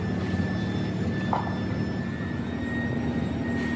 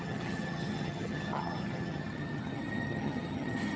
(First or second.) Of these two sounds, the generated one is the second